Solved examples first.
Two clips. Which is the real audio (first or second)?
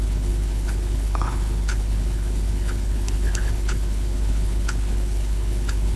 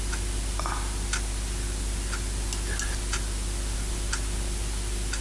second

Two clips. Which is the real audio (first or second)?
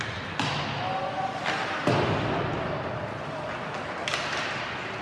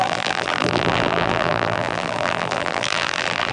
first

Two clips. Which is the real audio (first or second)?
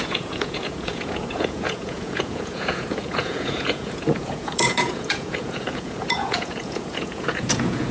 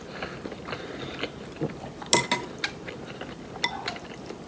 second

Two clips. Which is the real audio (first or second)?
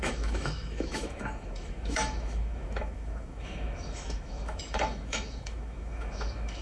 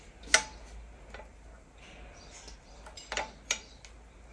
second